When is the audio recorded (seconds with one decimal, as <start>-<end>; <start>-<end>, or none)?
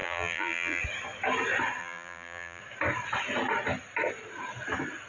0.8-1.8; 2.6-5.1